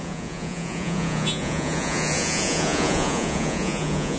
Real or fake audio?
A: fake